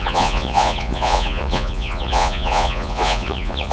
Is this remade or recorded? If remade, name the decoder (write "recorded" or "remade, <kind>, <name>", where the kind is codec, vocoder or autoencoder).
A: remade, vocoder, Vocos